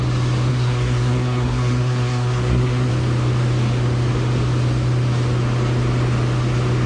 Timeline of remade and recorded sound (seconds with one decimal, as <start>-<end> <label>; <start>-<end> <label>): 0.0-0.5 recorded; 0.5-2.9 remade; 2.9-6.9 recorded